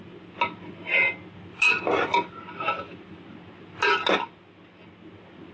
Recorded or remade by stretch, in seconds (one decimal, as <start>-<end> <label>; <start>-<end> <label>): 0.0-5.5 recorded